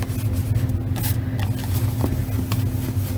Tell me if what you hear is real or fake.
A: real